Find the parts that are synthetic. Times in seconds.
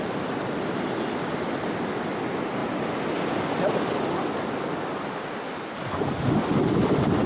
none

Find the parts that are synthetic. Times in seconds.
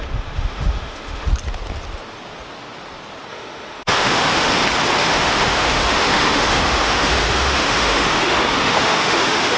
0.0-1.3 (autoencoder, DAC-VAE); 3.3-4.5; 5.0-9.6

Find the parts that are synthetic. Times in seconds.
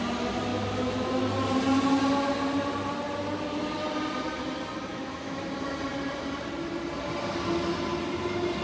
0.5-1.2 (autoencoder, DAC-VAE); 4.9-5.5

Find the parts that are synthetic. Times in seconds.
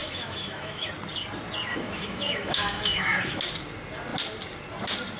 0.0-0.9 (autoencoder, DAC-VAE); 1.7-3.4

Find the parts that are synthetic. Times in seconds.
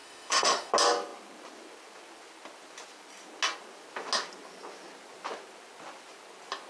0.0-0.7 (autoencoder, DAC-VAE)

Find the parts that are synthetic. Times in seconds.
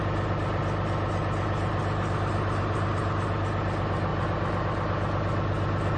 none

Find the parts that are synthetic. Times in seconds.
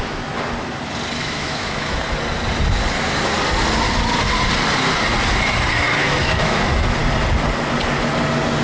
1.2-2.0 (autoencoder, DAC-VAE); 6.0-6.6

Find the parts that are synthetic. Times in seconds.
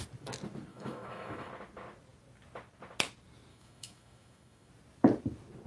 0.7-1.5 (autoencoder, DAC-VAE); 3.5-4.7